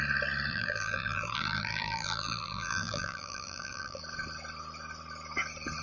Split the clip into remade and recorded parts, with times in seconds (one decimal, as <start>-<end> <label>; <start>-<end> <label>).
0.0-0.5 recorded; 0.5-4.0 remade; 4.0-5.8 recorded